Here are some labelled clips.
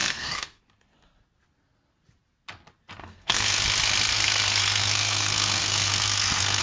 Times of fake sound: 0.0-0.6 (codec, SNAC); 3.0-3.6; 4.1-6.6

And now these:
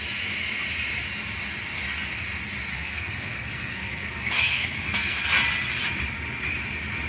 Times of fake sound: 2.7-5.2 (codec, SNAC)

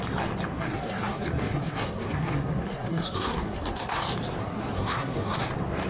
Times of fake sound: 0.5-4.0 (codec, SNAC); 4.4-5.5

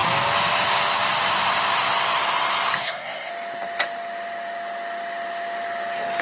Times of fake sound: 2.8-3.3 (codec, SNAC)